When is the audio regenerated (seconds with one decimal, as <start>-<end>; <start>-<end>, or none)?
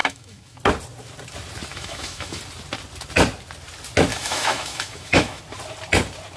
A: 0.0-0.6; 1.7-2.4; 4.1-5.4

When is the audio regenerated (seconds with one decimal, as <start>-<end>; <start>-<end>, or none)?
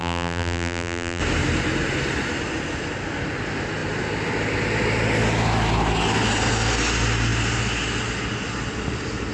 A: 0.0-1.2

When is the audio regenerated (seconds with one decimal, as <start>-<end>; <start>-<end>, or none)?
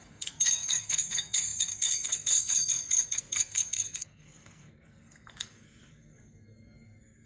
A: 0.0-7.3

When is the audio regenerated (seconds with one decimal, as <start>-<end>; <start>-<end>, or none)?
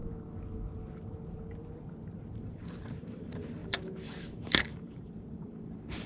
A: 2.4-6.1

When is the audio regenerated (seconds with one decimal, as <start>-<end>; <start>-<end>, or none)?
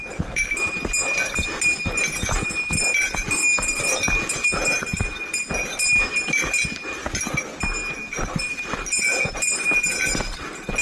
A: none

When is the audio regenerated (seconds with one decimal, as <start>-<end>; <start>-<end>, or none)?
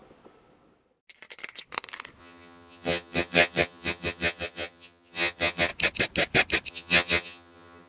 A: 2.2-5.7; 6.7-7.9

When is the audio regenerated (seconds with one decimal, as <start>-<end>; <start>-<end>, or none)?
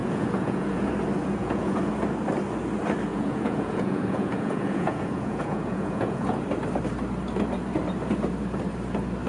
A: 0.0-0.9; 1.4-1.9; 3.1-6.4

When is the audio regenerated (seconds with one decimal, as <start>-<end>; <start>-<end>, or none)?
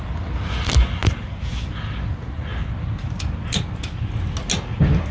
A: none